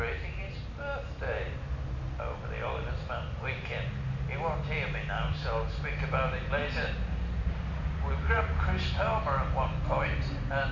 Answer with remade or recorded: recorded